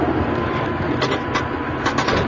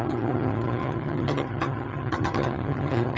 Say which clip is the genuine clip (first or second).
first